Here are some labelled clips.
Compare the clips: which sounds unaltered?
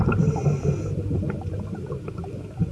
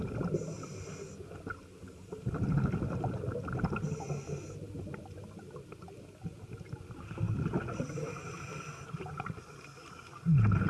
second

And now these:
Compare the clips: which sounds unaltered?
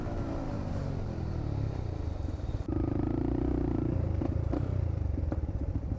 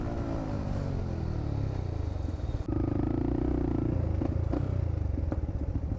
second